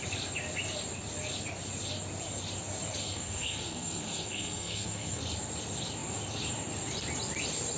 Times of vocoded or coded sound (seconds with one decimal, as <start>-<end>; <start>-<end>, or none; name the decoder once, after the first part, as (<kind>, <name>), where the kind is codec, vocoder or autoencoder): 3.0-5.2 (codec, SNAC)